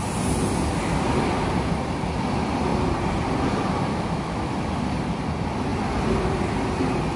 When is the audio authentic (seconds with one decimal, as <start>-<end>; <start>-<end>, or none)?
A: 0.0-3.9; 4.5-7.2